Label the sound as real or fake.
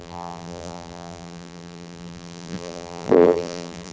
fake